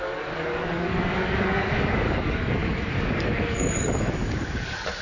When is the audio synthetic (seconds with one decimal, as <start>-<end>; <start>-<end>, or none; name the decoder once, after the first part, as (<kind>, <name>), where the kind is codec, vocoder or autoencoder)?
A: 0.0-5.0 (codec, DAC)